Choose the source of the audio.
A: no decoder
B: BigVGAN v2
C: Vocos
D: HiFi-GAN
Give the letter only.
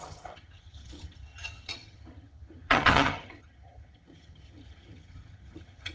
D